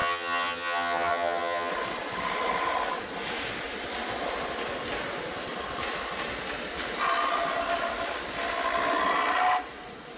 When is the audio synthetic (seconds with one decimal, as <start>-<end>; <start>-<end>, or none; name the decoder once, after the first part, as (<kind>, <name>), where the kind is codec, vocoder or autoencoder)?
0.0-1.7 (vocoder, HiFi-GAN)